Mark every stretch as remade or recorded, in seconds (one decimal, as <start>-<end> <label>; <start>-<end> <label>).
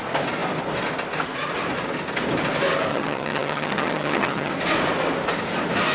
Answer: 0.0-2.9 recorded; 2.9-4.5 remade; 4.5-5.9 recorded